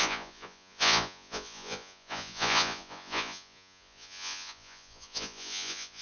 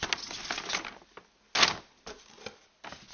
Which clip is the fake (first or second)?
first